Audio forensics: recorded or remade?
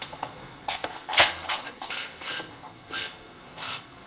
remade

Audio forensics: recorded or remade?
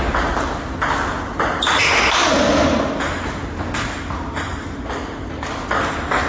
recorded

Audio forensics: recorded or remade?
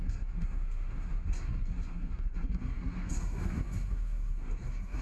remade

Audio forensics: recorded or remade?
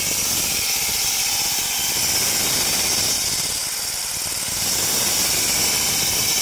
recorded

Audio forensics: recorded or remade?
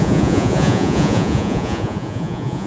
remade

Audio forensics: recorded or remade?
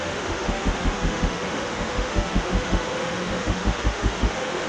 remade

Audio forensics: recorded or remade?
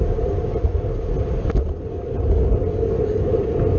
recorded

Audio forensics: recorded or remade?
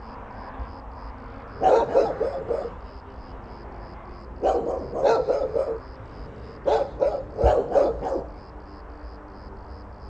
recorded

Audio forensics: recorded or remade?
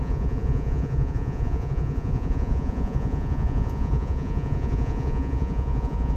remade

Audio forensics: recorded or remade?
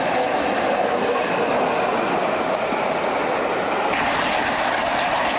recorded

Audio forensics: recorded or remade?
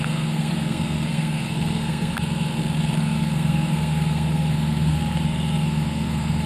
remade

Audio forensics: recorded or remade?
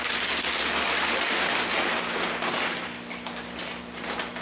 recorded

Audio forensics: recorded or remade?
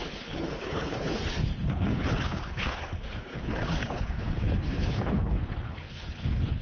remade